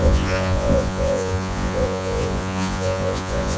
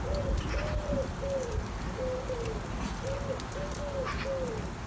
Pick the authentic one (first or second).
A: second